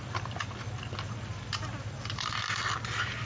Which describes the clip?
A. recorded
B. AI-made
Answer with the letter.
A